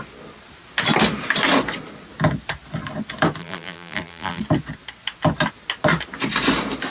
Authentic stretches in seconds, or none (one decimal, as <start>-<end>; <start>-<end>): 0.0-3.4; 4.4-6.9

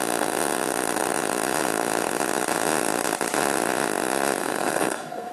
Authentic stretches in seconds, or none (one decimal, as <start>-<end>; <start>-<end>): 0.0-4.4

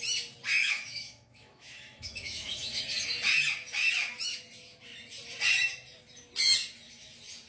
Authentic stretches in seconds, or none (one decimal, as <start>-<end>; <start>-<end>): 0.0-0.6; 2.8-7.5

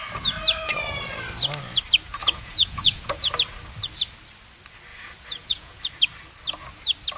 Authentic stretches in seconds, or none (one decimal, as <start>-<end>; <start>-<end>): 0.0-2.2; 3.3-4.9; 5.8-7.2

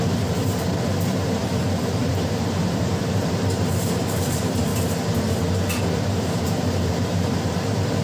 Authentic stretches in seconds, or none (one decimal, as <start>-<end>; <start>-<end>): 4.7-6.5

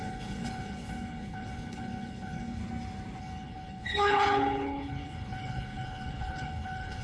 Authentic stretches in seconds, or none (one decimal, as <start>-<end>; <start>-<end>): 2.6-3.2

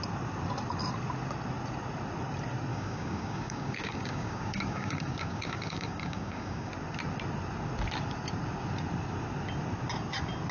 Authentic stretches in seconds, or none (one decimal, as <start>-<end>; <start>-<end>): 0.0-2.7; 6.7-10.5